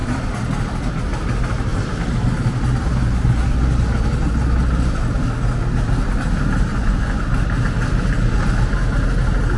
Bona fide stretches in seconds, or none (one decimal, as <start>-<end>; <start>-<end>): 0.0-6.7; 7.3-9.6